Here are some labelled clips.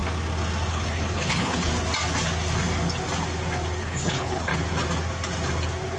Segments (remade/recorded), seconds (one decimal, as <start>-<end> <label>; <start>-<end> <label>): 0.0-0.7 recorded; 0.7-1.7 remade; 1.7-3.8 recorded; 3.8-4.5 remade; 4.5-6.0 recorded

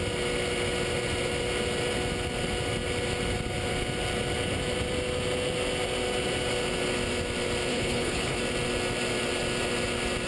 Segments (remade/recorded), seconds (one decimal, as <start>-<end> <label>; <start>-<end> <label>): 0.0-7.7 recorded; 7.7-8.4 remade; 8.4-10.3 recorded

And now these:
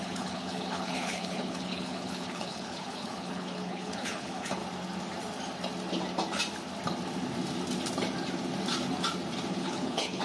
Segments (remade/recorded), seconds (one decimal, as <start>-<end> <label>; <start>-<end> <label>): 0.0-4.6 remade; 4.6-9.5 recorded; 9.5-10.2 remade

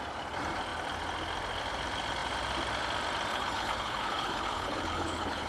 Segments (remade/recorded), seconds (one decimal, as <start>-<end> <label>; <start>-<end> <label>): 0.0-3.3 recorded; 3.3-5.5 remade

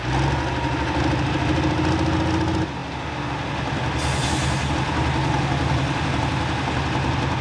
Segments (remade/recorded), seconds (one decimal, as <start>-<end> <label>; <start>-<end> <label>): 0.0-7.4 recorded

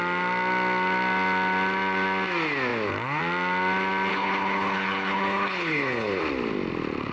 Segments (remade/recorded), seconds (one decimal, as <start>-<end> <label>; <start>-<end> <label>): 0.0-4.1 recorded; 4.1-6.2 remade; 6.2-7.1 recorded